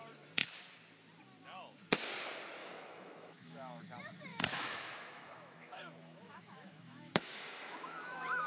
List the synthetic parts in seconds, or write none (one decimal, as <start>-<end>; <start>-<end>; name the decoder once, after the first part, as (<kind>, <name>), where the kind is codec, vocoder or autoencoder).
2.6-3.8 (autoencoder, DAC-VAE); 4.3-8.5

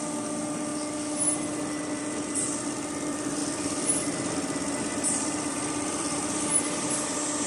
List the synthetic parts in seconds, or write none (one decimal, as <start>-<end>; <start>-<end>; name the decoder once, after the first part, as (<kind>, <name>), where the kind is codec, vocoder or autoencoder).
3.4-6.9 (vocoder, BigVGAN v2)